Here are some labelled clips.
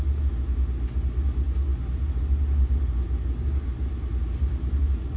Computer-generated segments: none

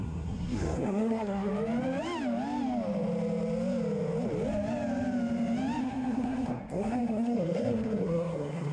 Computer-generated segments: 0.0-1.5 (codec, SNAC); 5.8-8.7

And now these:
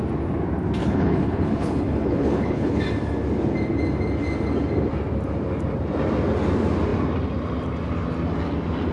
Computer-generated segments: 0.8-2.8 (codec, HILCodec)

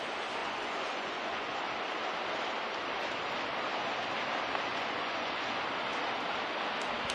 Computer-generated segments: 0.4-1.6 (vocoder, Vocos); 4.7-5.6

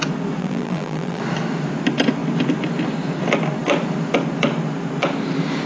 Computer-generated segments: 0.4-1.2 (vocoder, BigVGAN v2)

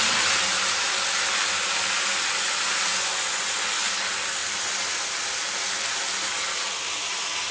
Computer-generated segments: 2.9-3.9 (vocoder, Vocos)

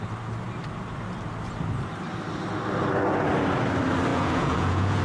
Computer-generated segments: 4.1-5.0 (vocoder, Vocos)

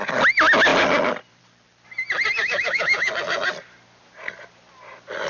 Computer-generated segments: 2.4-3.1 (autoencoder, DAC-VAE)